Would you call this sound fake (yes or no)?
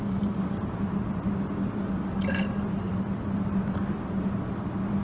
no